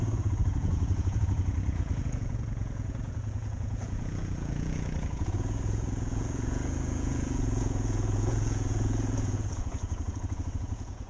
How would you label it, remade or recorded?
remade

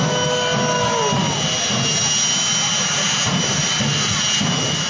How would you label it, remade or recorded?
recorded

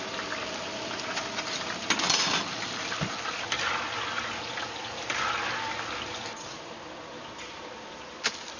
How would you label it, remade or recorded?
recorded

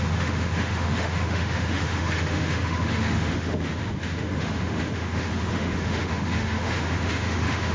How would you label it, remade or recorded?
remade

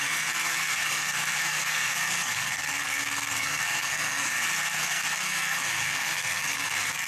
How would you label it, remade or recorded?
remade